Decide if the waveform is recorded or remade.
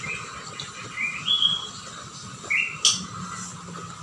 recorded